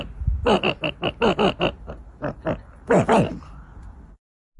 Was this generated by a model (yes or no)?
no